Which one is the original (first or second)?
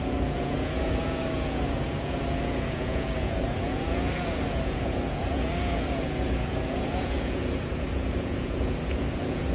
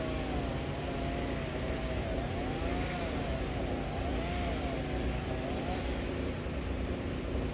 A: second